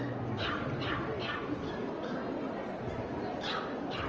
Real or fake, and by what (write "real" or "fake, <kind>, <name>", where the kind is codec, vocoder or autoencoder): real